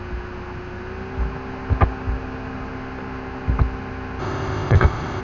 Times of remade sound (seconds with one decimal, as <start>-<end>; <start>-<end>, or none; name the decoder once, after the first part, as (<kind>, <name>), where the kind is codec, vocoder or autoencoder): 4.2-5.2 (codec, ZipCodec)